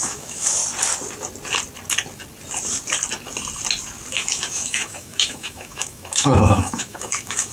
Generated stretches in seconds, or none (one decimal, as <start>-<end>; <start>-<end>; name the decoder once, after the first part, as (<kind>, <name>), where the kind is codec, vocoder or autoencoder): 0.0-0.6 (autoencoder, DAC-VAE); 4.1-7.5